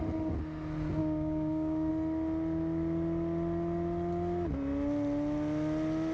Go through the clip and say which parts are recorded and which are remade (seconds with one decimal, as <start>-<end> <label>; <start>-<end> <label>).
0.0-1.0 recorded; 1.0-1.9 remade; 1.9-6.1 recorded